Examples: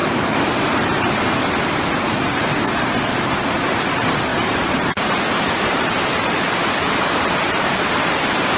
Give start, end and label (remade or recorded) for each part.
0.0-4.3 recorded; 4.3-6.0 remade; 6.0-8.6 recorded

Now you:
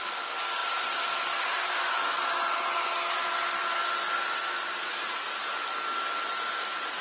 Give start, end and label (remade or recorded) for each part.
0.0-7.0 recorded

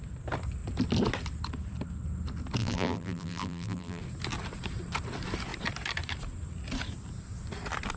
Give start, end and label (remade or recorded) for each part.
0.0-2.6 recorded; 2.6-4.0 remade; 4.0-8.0 recorded